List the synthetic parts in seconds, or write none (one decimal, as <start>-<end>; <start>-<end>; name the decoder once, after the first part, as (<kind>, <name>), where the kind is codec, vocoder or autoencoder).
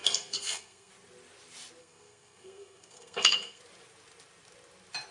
0.0-0.9 (codec, SNAC); 1.8-3.6